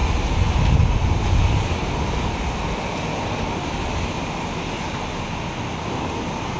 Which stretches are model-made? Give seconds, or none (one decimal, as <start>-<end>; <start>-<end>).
none